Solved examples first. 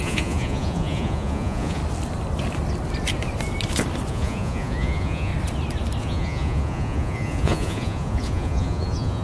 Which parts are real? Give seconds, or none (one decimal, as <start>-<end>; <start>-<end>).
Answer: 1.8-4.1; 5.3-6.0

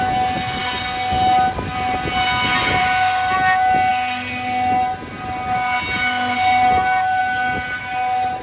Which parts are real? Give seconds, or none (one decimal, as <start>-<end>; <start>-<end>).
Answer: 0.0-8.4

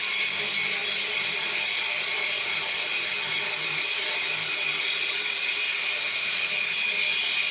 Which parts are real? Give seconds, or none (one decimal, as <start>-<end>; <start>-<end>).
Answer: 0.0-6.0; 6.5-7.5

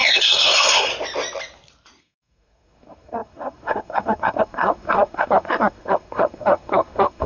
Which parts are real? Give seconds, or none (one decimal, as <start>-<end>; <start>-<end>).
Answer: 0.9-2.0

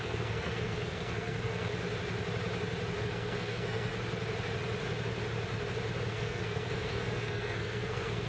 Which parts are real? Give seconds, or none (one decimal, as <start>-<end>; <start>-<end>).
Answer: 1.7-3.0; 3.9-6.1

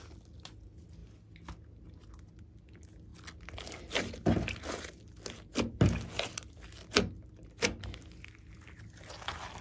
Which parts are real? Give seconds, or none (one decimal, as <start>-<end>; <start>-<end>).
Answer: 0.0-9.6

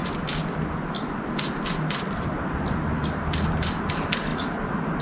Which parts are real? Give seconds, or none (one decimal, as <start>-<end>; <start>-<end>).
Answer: 0.0-5.0

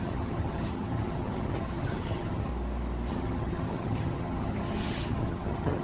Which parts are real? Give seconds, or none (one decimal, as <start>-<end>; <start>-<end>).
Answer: 2.5-3.1